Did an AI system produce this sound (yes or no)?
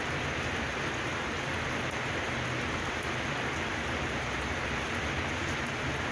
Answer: no